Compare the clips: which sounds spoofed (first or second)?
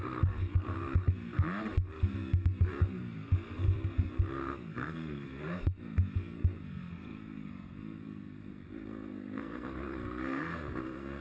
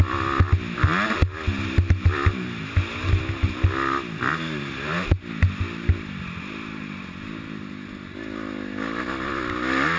first